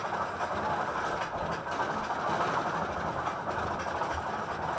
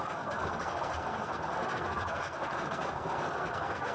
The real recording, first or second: first